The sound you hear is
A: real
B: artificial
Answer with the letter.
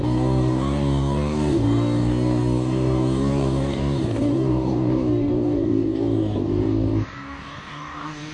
B